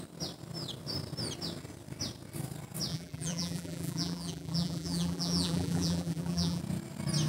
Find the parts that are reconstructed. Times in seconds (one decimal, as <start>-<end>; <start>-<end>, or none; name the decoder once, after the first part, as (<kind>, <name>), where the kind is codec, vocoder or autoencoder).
2.9-6.6 (vocoder, BigVGAN v2)